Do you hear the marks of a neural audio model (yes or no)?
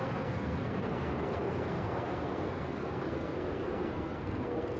yes